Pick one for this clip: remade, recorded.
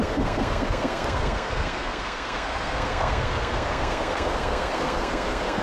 remade